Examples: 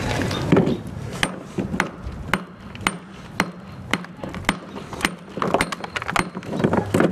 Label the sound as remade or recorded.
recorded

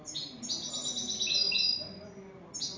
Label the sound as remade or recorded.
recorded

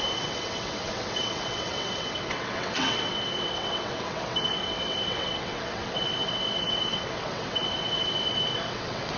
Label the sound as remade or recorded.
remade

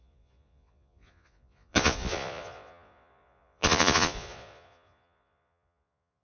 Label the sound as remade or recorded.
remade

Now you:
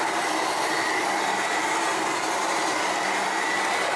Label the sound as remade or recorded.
recorded